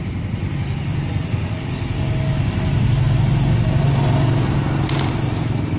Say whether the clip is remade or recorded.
recorded